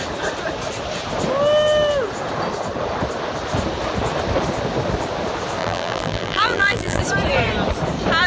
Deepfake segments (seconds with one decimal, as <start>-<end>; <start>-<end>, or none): 5.6-7.0